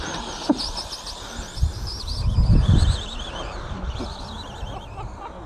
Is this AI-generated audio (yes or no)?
no